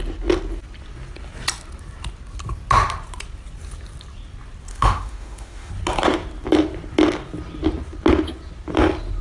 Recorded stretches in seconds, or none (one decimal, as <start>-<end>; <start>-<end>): 0.0-4.7; 5.7-9.2